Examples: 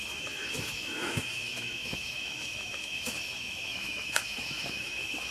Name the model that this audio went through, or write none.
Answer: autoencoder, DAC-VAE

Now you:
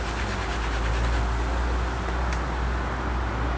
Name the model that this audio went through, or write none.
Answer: none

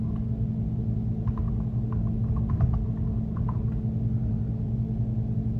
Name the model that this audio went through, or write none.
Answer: none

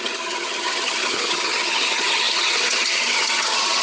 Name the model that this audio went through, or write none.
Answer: vocoder, HiFi-GAN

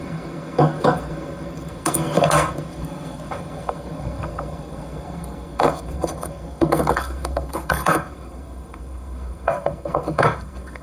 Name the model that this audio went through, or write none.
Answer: codec, SNAC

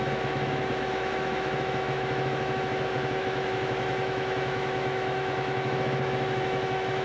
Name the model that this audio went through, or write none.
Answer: autoencoder, DAC-VAE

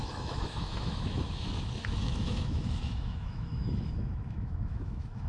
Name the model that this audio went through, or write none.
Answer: autoencoder, DAC-VAE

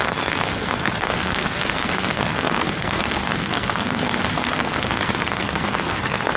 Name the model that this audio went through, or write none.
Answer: codec, SNAC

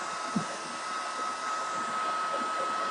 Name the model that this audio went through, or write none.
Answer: none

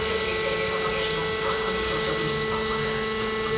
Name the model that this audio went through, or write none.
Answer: none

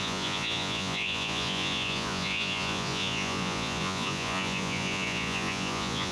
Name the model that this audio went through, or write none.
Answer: vocoder, Vocos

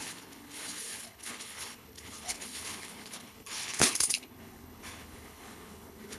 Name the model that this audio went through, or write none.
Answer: codec, HILCodec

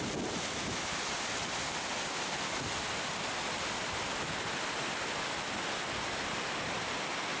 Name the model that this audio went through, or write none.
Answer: none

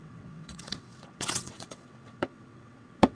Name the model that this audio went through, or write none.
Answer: vocoder, WaveNeXt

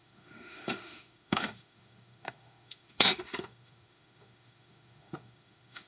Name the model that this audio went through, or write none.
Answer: autoencoder, DAC-VAE